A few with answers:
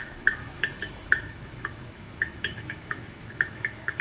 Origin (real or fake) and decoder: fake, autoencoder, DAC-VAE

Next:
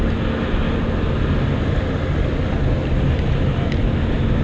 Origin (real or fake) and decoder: real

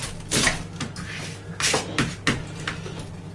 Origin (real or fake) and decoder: real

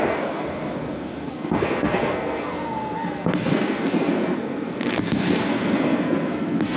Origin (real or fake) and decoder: fake, codec, SNAC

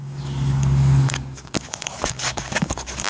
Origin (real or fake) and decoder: fake, codec, DAC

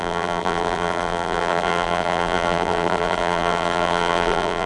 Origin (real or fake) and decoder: fake, vocoder, BigVGAN v2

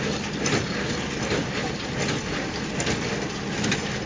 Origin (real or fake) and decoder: real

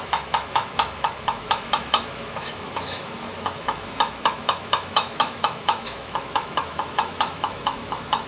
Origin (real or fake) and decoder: fake, autoencoder, DAC-VAE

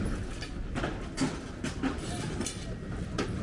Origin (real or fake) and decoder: real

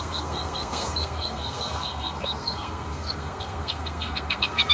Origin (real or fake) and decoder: fake, codec, SNAC